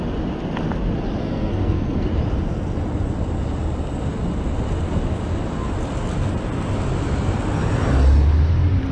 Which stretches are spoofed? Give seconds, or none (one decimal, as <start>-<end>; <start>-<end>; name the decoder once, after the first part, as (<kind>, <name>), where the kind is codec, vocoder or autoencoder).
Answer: 1.2-2.1 (codec, SNAC)

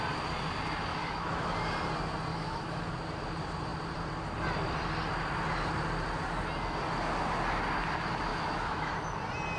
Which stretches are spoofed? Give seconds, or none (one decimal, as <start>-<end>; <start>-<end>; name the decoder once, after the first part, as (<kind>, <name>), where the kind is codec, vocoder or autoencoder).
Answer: 0.9-1.5 (autoencoder, DAC-VAE); 2.3-2.9; 8.3-8.9

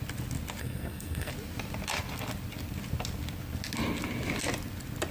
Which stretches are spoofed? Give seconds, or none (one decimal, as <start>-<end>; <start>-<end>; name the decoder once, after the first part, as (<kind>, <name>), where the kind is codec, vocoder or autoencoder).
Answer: 0.6-1.3 (codec, SNAC)

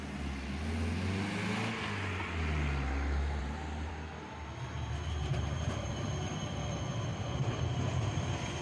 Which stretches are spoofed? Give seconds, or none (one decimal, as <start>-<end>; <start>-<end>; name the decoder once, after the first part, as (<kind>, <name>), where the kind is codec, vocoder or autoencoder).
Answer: 3.4-3.9 (vocoder, BigVGAN v2); 5.3-5.9; 7.1-8.1

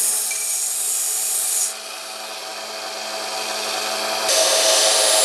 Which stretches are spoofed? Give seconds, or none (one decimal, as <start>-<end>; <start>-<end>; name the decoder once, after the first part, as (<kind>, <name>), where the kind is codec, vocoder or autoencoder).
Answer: none

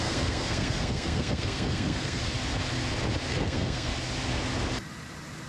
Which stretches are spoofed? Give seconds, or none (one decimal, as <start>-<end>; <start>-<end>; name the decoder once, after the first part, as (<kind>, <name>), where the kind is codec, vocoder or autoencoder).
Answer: 0.0-2.2 (codec, SNAC); 3.3-3.9

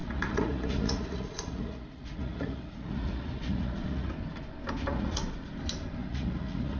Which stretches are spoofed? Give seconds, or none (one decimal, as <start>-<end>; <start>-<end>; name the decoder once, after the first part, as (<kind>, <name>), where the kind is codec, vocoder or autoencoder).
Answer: 0.0-4.1 (vocoder, Vocos); 4.9-5.4; 6.0-6.8